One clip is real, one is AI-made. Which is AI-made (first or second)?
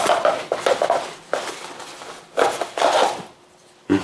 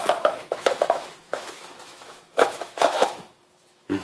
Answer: second